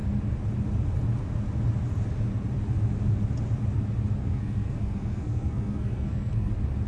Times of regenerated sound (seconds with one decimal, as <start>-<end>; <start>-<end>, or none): 4.2-6.5